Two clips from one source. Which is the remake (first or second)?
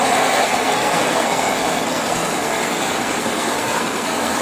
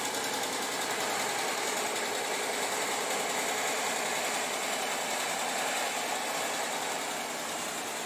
first